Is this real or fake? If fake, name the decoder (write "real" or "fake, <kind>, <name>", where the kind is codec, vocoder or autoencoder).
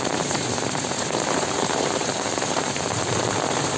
fake, vocoder, BigVGAN v2